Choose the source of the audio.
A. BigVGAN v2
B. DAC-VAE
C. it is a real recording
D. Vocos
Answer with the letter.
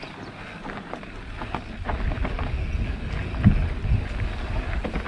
C